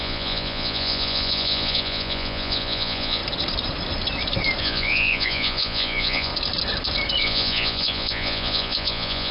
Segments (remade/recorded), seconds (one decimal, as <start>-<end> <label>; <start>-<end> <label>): 0.0-3.2 remade; 3.2-4.6 recorded; 4.6-6.3 remade; 6.3-7.2 recorded; 7.2-9.3 remade